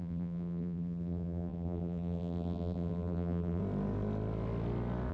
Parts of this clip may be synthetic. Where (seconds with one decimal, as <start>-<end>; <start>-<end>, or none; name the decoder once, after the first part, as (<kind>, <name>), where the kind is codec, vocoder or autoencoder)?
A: 0.0-3.6 (vocoder, BigVGAN v2)